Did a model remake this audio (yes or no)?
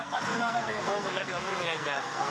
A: yes